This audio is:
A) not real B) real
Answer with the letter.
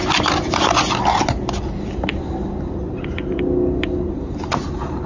B